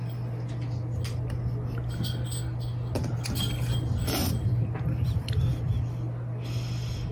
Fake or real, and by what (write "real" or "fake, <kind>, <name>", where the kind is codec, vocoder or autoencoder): real